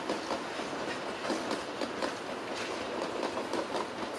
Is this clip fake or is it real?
real